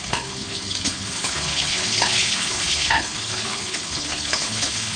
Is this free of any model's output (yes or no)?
no